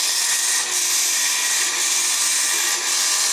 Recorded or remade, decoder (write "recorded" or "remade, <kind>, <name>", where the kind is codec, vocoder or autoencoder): recorded